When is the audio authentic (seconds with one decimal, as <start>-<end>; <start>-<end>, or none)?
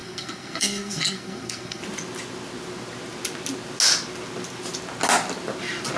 1.8-6.0